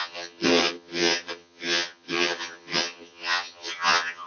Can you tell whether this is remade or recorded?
remade